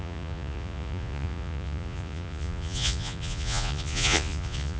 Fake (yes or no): yes